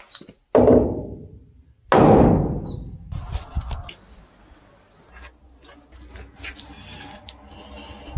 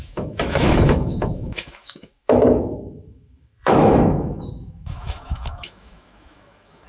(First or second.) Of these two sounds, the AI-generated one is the second